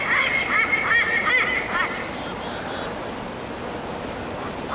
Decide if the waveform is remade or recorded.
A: recorded